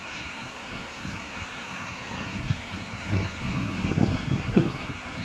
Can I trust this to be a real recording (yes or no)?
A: no